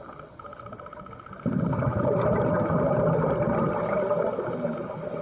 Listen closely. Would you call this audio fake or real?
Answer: real